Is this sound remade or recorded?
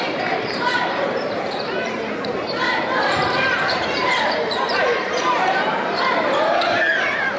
remade